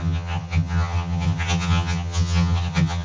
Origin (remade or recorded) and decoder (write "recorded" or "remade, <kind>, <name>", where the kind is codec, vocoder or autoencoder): remade, vocoder, HiFi-GAN